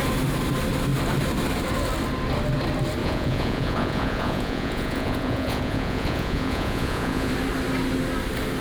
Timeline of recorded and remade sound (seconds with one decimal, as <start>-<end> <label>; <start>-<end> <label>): 0.0-3.0 recorded; 3.0-7.3 remade; 7.3-8.6 recorded